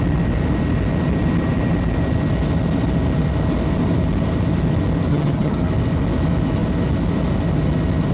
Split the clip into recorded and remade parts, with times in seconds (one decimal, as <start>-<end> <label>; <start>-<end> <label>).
0.0-5.1 recorded; 5.1-5.7 remade; 5.7-8.1 recorded

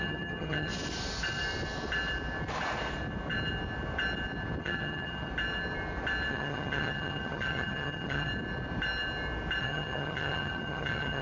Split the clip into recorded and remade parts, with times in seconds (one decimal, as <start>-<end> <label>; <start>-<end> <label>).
0.0-0.7 remade; 0.7-4.6 recorded; 4.6-5.3 remade; 5.3-6.3 recorded; 6.3-8.3 remade; 8.3-9.6 recorded; 9.6-11.2 remade